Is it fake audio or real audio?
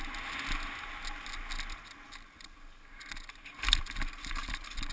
real